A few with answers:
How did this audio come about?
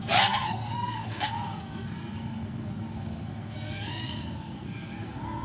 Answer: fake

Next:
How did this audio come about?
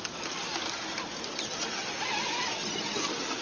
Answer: real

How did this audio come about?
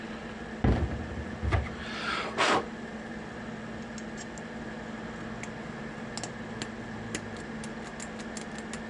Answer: real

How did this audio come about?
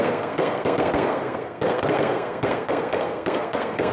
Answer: fake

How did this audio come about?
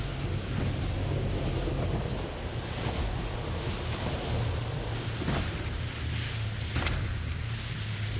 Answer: real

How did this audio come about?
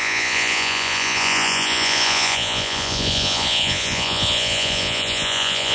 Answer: fake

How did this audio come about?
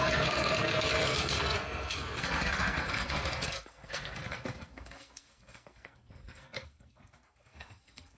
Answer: fake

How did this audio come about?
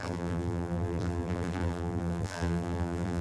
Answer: fake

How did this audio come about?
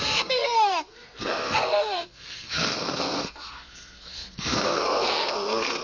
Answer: fake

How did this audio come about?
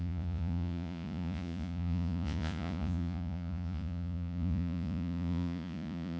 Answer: fake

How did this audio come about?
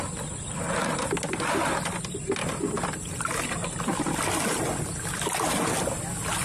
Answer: real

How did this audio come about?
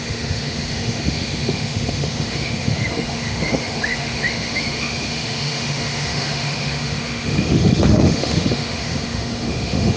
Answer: fake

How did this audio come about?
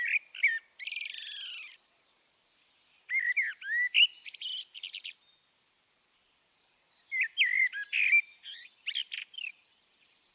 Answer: fake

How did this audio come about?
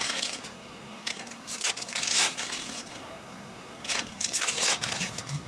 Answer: fake